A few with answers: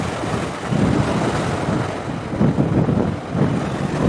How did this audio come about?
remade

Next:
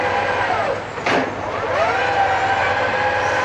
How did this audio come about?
recorded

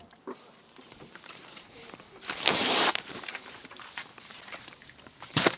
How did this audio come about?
remade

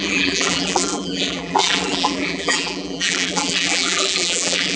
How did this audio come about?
remade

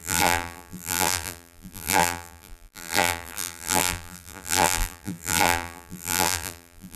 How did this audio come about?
remade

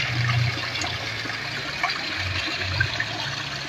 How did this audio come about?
recorded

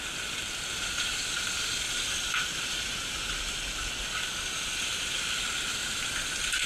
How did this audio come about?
recorded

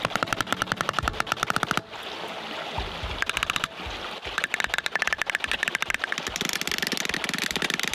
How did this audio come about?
recorded